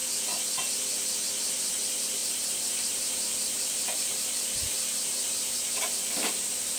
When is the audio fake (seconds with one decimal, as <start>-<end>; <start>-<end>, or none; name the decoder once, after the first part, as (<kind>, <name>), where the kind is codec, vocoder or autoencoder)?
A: 0.0-6.8 (vocoder, BigVGAN v2)